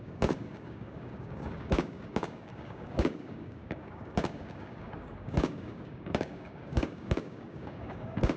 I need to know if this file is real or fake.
fake